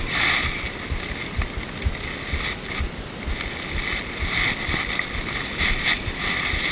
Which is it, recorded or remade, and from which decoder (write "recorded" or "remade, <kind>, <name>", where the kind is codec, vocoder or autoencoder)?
recorded